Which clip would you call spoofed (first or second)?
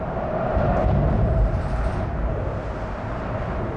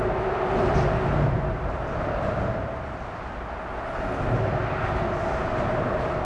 first